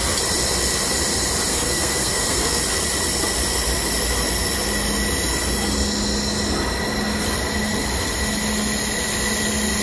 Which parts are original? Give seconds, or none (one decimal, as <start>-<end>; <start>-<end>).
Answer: 0.0-1.5; 2.6-9.8